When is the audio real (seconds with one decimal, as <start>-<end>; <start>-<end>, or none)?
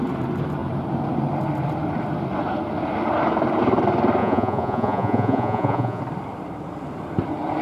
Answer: 0.0-4.2; 6.0-7.6